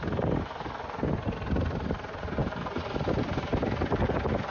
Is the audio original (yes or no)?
yes